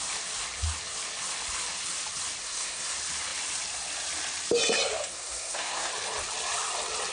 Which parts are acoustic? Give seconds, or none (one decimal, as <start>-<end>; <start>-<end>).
0.0-2.4; 2.9-5.1; 5.9-7.1